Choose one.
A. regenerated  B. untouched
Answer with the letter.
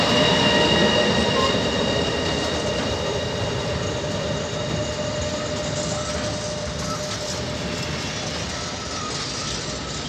B